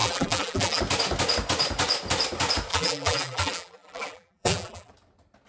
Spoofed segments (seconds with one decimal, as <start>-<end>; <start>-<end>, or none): 0.0-0.8; 2.7-4.9